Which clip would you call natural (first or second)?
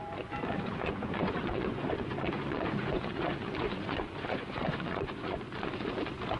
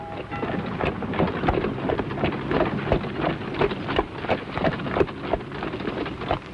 second